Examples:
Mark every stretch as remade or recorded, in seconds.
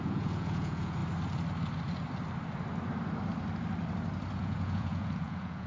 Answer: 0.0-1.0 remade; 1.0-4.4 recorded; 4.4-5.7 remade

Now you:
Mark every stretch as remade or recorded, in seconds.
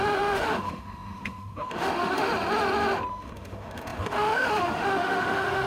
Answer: 0.0-2.3 remade; 2.3-3.1 recorded; 3.1-5.7 remade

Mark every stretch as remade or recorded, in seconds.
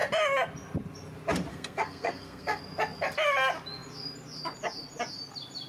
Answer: 0.0-1.5 recorded; 1.5-2.6 remade; 2.6-5.7 recorded